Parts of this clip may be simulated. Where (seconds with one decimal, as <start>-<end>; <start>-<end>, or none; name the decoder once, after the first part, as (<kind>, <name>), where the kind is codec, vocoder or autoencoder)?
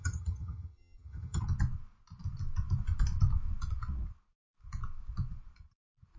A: 0.0-1.4 (vocoder, HiFi-GAN)